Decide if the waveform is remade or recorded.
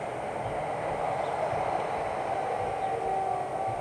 recorded